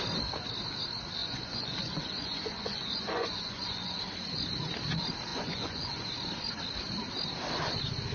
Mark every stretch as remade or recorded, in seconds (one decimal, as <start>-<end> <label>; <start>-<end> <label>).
0.0-1.2 recorded; 1.2-4.0 remade; 4.0-5.3 recorded; 5.3-6.1 remade; 6.1-8.1 recorded